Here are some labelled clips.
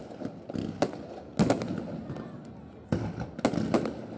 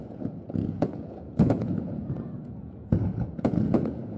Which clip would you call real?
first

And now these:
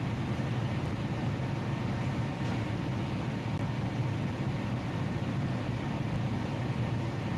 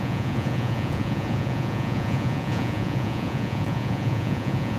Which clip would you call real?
first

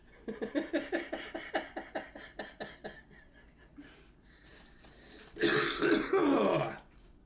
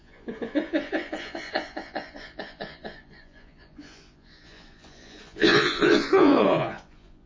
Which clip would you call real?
first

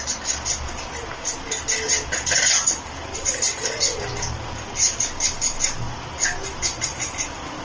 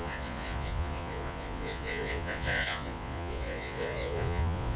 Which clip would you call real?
first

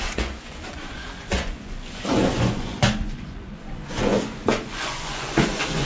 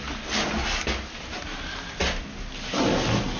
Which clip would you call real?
second